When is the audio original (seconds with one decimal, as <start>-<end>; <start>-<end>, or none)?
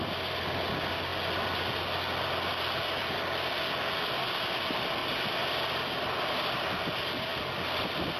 0.0-5.0; 5.6-8.2